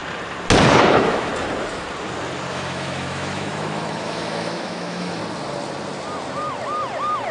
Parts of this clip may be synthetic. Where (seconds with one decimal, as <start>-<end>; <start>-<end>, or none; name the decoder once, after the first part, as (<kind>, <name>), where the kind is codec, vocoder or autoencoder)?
0.9-1.3 (autoencoder, DAC-VAE); 2.5-5.2